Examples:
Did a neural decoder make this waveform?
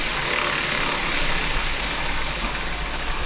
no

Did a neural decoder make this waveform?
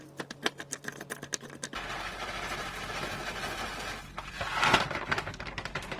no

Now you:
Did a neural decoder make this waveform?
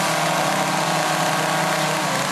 no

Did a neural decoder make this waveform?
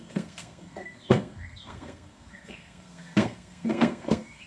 yes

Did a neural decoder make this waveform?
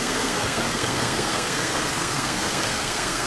yes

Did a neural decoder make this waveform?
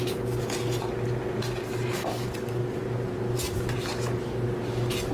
no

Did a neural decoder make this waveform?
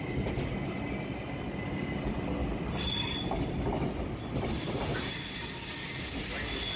no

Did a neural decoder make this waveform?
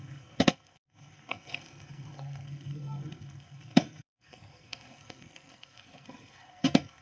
yes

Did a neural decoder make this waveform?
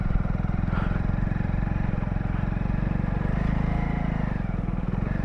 no